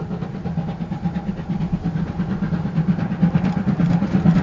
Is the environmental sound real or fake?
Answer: real